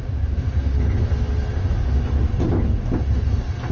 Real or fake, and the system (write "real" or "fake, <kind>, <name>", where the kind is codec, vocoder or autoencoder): real